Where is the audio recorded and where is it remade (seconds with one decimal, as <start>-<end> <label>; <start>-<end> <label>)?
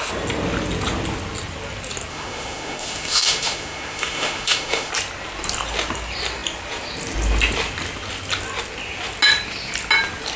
0.0-2.1 recorded; 2.1-4.9 remade; 4.9-10.4 recorded